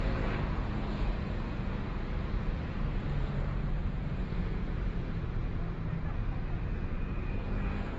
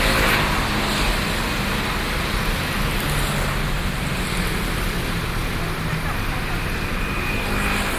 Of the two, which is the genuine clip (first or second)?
second